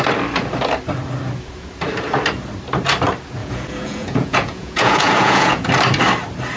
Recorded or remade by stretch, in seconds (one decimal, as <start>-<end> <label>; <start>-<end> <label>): 0.0-3.4 recorded; 3.4-5.7 remade; 5.7-6.6 recorded